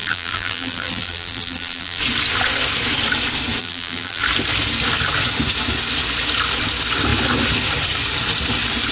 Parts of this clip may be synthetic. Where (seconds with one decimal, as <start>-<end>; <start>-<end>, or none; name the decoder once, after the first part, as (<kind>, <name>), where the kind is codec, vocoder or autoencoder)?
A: 0.0-2.0 (vocoder, BigVGAN v2); 3.6-4.2